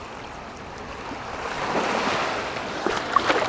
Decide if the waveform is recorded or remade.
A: recorded